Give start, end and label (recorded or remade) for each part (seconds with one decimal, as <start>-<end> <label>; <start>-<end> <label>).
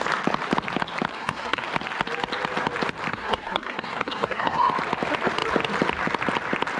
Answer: 0.0-1.1 recorded; 1.1-1.6 remade; 1.6-3.1 recorded; 3.1-4.7 remade; 4.7-6.8 recorded